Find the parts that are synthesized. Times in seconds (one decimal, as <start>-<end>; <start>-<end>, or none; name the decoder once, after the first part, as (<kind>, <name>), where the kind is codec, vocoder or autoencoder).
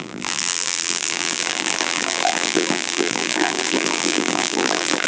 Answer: 0.0-5.1 (vocoder, BigVGAN v2)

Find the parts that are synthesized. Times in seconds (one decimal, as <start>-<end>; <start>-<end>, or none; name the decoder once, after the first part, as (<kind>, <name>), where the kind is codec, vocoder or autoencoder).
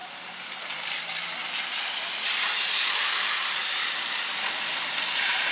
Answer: none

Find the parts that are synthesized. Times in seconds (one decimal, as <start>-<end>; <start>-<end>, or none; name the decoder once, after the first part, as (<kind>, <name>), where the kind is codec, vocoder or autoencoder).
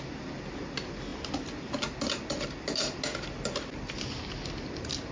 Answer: none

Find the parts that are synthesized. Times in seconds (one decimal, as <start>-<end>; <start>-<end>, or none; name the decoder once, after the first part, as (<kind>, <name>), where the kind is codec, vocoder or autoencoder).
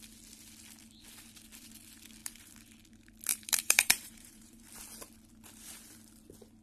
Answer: 2.2-2.7 (vocoder, BigVGAN v2); 3.3-4.8